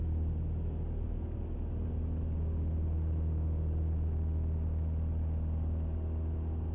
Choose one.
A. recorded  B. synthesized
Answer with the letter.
A